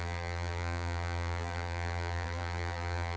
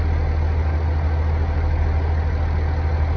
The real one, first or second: second